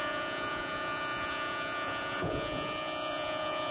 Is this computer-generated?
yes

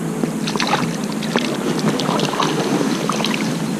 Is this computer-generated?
no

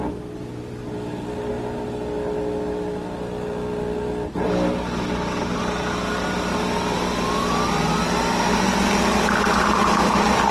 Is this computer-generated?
no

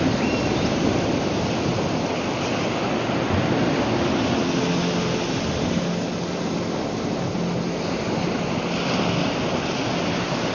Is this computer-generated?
no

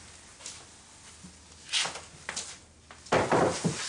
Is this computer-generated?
no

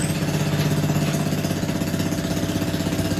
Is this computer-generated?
no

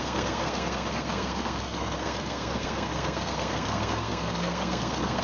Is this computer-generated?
yes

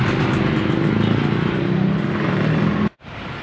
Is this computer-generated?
no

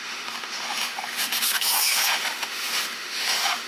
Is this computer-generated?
yes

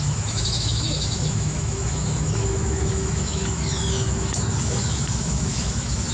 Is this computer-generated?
yes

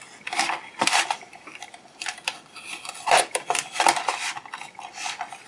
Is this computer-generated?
yes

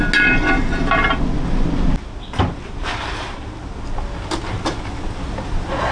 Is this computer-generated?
no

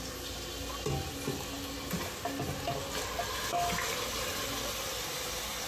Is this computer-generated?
no